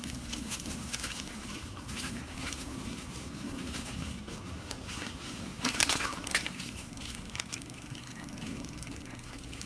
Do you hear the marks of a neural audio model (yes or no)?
yes